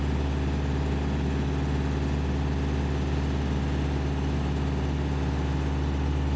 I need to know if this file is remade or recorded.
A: recorded